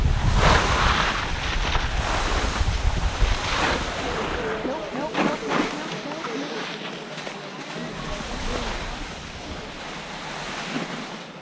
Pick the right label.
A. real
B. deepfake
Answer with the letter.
A